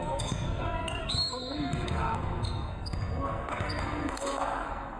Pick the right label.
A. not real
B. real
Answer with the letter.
A